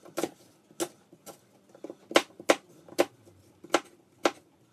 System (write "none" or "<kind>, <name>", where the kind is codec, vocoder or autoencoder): none